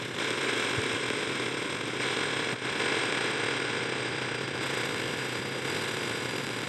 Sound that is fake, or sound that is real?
real